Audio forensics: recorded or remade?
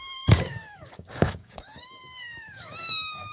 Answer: remade